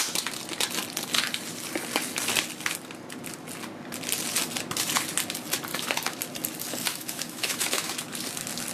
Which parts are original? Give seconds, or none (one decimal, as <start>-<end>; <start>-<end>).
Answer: 0.0-5.7; 6.2-6.9; 7.9-8.7